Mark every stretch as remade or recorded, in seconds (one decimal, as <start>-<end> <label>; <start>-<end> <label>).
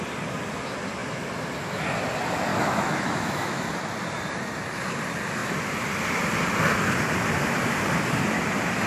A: 0.0-2.5 recorded; 2.5-3.7 remade; 3.7-8.9 recorded